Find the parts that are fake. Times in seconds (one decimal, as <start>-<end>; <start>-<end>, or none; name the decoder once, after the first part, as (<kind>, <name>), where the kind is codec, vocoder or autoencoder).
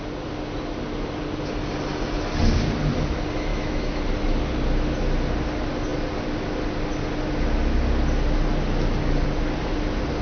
3.5-4.0 (autoencoder, DAC-VAE)